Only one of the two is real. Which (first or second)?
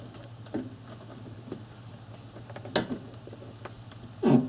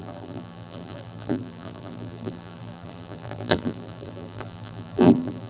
first